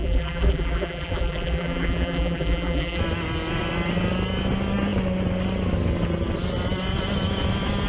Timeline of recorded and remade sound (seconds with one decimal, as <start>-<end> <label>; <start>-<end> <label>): 0.0-3.0 remade; 3.0-7.9 recorded